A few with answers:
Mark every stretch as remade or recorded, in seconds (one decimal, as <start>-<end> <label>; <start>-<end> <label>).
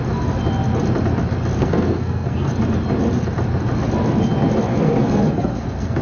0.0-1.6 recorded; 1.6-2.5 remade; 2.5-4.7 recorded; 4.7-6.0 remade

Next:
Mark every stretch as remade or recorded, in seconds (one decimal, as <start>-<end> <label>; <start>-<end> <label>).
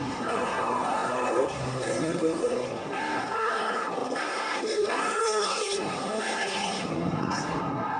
0.0-8.0 remade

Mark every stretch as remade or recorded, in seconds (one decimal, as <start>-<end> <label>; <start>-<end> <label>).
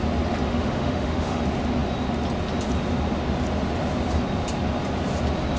0.0-0.5 recorded; 0.5-1.4 remade; 1.4-5.6 recorded